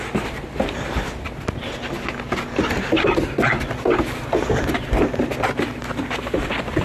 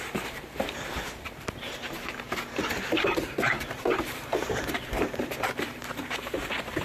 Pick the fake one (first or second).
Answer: second